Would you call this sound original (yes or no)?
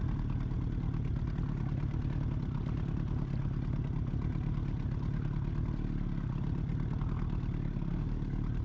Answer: yes